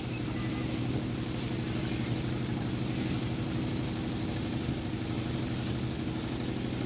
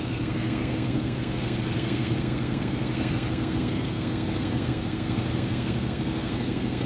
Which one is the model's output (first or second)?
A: second